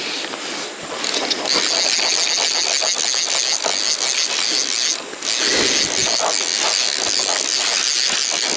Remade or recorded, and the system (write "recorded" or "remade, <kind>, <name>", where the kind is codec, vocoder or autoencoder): recorded